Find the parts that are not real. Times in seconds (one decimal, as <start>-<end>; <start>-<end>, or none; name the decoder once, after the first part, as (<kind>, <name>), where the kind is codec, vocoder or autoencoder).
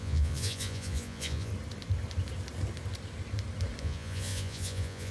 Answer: 0.0-1.5 (vocoder, Vocos); 3.8-5.1